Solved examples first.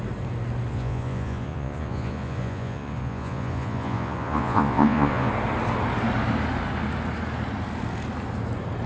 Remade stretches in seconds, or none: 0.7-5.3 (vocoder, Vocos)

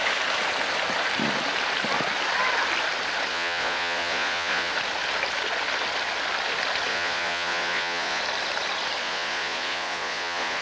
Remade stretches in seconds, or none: 3.3-4.7 (vocoder, Vocos); 6.9-8.2; 9.0-10.6

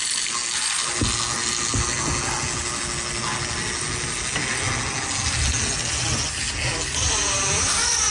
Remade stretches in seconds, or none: none